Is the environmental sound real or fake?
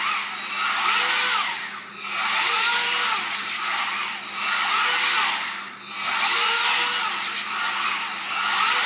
real